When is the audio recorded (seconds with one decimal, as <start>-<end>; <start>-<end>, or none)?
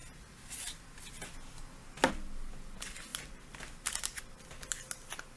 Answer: 0.0-5.4